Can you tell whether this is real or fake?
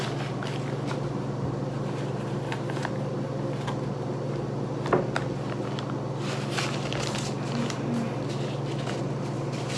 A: real